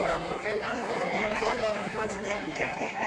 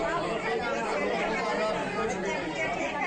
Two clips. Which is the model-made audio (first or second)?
first